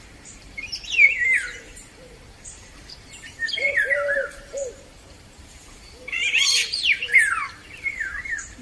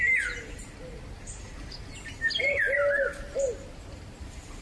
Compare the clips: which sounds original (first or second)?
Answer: second